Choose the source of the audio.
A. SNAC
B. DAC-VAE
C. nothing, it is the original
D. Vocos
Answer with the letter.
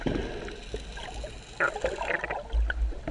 C